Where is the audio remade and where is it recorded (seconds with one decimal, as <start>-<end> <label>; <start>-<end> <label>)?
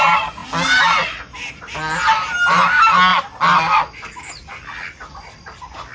0.0-5.9 recorded